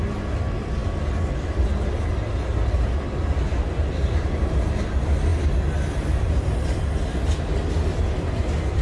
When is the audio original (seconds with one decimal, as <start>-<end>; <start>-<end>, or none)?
0.0-8.8